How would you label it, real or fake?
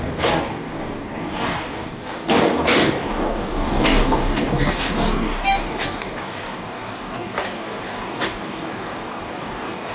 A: fake